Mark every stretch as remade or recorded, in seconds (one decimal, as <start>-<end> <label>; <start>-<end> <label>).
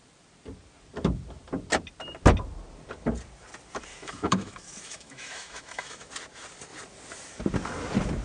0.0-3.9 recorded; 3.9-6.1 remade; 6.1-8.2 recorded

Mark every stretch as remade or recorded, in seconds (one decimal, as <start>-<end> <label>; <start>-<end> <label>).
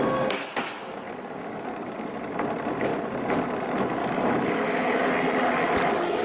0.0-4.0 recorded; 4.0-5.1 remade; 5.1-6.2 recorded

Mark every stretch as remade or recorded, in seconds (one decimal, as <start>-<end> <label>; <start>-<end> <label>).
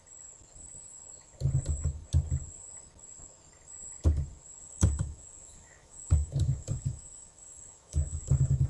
0.0-4.6 recorded; 4.6-8.7 remade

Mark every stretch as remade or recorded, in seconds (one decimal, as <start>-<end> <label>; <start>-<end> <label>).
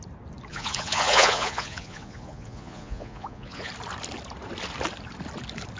0.0-0.5 recorded; 0.5-3.7 remade; 3.7-5.8 recorded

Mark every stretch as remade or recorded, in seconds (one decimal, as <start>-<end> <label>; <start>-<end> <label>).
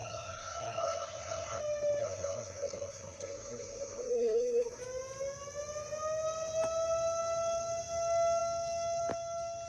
0.0-1.6 remade; 1.6-2.0 recorded; 2.0-4.8 remade; 4.8-9.7 recorded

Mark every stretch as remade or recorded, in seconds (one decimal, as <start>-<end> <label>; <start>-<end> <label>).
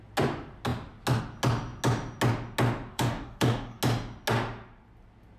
0.0-2.9 recorded; 2.9-3.8 remade; 3.8-5.4 recorded